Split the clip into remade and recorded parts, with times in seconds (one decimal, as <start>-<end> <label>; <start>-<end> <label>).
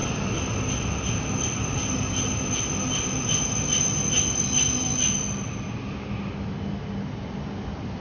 0.0-8.0 recorded